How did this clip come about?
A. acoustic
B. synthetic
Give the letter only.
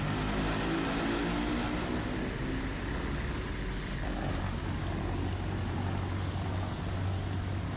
A